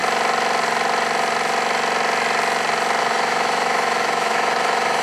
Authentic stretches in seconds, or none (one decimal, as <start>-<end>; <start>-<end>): 0.0-3.0